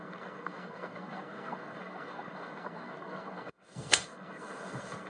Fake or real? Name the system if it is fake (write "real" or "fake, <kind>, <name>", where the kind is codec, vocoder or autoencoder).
fake, codec, SNAC